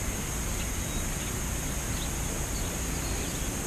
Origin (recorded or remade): recorded